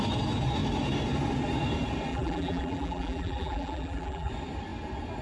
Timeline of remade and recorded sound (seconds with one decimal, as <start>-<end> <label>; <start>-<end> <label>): 0.0-2.1 recorded; 2.1-4.3 remade; 4.3-5.2 recorded

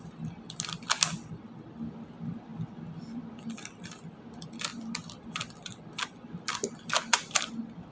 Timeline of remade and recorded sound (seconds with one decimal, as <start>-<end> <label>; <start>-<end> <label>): 0.0-7.9 recorded

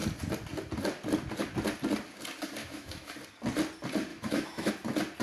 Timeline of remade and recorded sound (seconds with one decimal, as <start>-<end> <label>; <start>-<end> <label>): 0.0-2.6 recorded; 2.6-3.1 remade; 3.1-4.1 recorded; 4.1-4.7 remade; 4.7-5.2 recorded

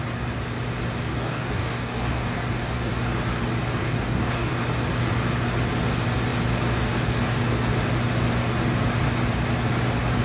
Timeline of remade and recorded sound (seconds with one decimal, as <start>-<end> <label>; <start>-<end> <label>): 0.0-1.1 recorded; 1.1-2.9 remade; 2.9-3.8 recorded; 3.8-4.5 remade; 4.5-10.2 recorded

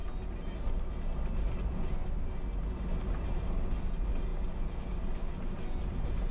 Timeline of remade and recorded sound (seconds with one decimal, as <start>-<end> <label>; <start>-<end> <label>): 0.0-6.3 recorded

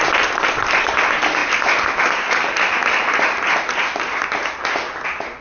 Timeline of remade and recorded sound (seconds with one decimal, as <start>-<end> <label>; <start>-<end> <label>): 0.0-5.4 recorded

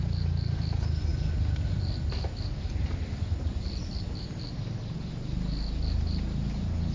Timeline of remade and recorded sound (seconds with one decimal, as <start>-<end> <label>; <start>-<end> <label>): 0.0-6.9 recorded

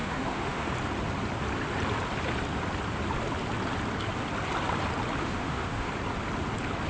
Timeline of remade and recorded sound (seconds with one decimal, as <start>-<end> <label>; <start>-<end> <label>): 0.0-0.7 remade; 0.7-5.2 recorded; 5.2-5.9 remade; 5.9-6.9 recorded